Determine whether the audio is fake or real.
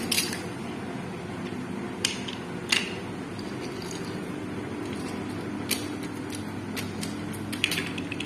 real